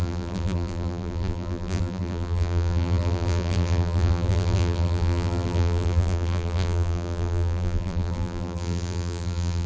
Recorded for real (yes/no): no